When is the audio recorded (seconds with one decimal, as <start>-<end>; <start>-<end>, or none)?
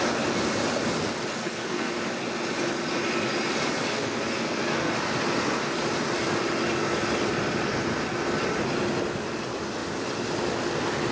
0.0-1.4; 1.9-3.9; 4.9-11.1